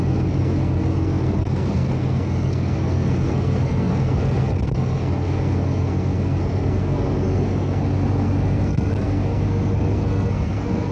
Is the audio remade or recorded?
remade